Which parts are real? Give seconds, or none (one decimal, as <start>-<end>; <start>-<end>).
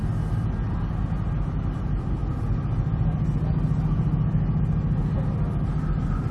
0.0-6.3